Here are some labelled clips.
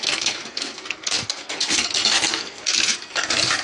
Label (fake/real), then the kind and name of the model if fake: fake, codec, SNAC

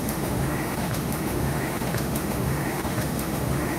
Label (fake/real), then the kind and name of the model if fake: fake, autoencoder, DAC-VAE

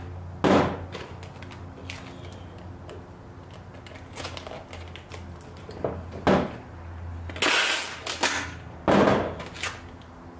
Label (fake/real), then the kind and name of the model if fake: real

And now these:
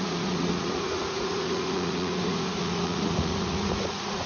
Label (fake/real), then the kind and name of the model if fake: fake, vocoder, Vocos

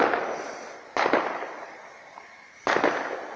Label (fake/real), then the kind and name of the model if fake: real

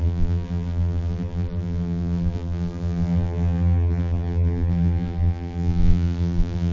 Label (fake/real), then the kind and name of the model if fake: fake, vocoder, BigVGAN v2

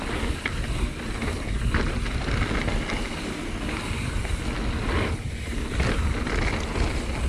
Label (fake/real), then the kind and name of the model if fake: real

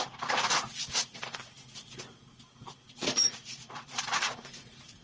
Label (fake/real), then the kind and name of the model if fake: fake, vocoder, Vocos